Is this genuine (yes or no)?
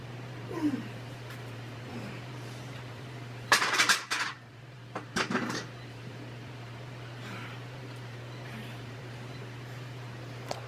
no